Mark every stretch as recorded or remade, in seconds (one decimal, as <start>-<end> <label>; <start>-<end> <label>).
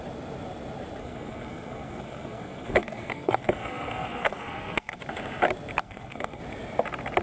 0.0-1.0 recorded; 1.0-5.0 remade; 5.0-5.8 recorded; 5.8-6.4 remade; 6.4-7.2 recorded